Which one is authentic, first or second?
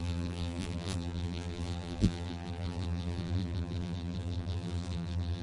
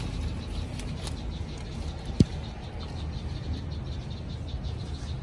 second